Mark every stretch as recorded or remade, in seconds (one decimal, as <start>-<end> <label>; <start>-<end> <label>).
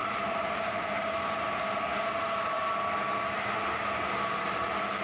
0.0-1.8 remade; 1.8-5.0 recorded